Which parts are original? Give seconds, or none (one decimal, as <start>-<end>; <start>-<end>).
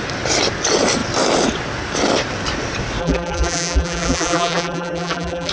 0.0-3.0